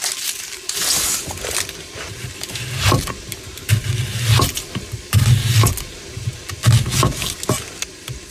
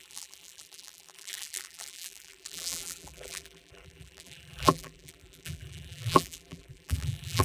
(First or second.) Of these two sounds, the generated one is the second